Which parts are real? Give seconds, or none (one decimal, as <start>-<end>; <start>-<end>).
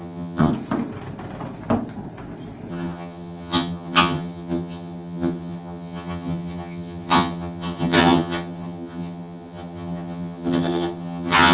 0.5-2.7